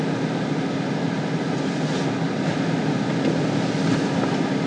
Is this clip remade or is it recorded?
recorded